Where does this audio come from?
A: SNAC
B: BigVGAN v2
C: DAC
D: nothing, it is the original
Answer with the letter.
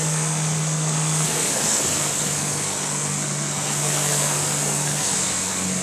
A